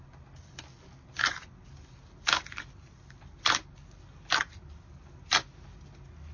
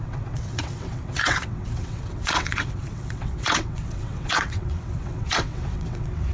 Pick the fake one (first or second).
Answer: second